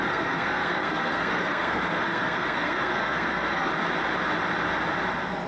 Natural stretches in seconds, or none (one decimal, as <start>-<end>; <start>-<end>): 3.7-5.5